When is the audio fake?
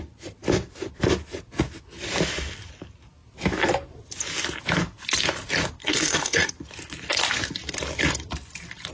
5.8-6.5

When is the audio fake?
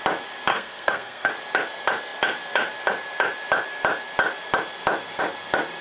0.5-1.3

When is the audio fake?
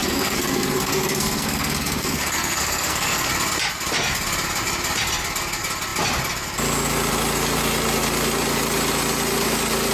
0.0-3.3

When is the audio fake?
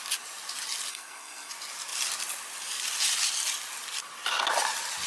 0.9-1.5